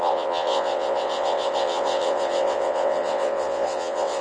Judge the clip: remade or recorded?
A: remade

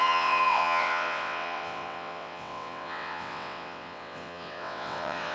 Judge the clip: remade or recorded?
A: remade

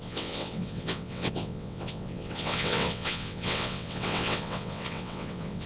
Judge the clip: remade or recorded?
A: remade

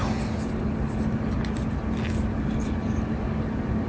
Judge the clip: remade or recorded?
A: recorded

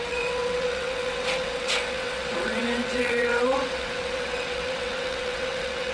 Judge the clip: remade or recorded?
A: remade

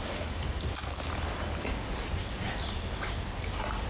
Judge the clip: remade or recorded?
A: recorded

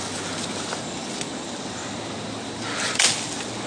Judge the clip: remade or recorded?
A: recorded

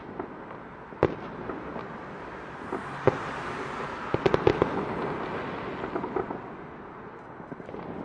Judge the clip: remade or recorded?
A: recorded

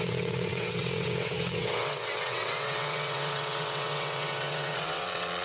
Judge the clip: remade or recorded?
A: remade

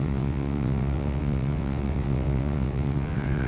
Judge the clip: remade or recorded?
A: remade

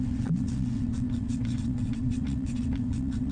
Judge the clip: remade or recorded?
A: remade